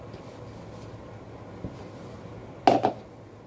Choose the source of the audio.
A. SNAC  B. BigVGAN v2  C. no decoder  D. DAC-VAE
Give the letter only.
C